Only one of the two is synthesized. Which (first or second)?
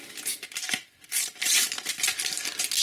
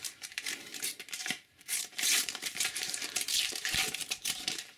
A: second